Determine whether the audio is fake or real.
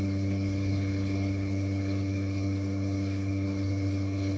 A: fake